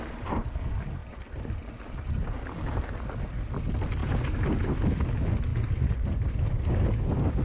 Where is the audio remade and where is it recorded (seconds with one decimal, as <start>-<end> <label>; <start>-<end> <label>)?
0.0-7.4 recorded